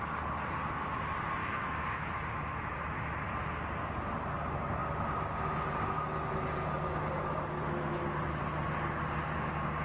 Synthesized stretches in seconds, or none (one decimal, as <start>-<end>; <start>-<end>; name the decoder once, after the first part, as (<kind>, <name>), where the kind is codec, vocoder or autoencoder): 1.4-2.6 (autoencoder, DAC-VAE)